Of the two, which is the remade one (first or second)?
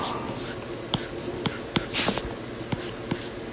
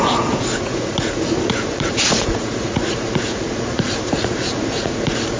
second